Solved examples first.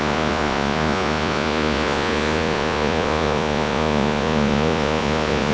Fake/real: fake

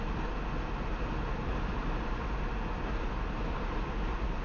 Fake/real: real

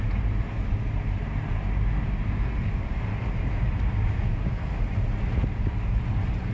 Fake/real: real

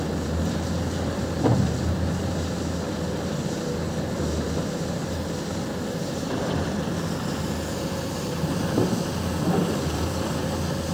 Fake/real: real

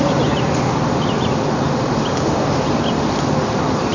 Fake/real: real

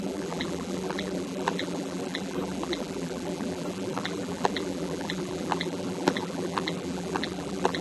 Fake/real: fake